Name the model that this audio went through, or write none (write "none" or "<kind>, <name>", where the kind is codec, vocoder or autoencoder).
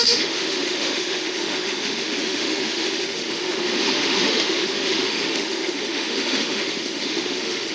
autoencoder, DAC-VAE